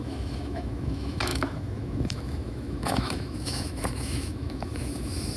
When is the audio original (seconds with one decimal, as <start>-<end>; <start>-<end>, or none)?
none

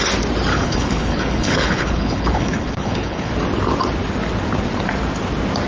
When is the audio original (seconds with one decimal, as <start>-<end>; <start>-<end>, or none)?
0.0-0.5; 3.3-5.7

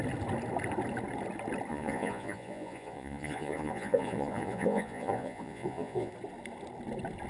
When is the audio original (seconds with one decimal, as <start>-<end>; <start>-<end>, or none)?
0.0-1.7; 6.1-7.3